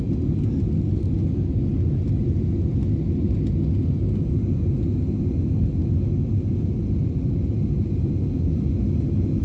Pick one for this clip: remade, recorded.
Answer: recorded